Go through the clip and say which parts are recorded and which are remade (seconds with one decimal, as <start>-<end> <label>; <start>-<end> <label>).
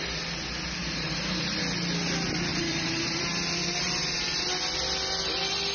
0.0-0.8 recorded; 0.8-1.6 remade; 1.6-2.5 recorded; 2.5-3.2 remade; 3.2-3.6 recorded; 3.6-4.2 remade; 4.2-5.7 recorded